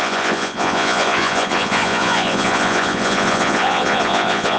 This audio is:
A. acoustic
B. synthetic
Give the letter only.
B